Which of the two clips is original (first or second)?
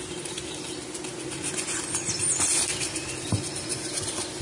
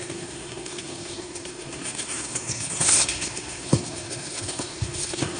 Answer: first